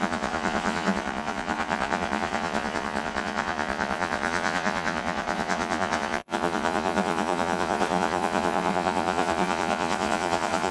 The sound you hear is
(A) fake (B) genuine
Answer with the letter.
A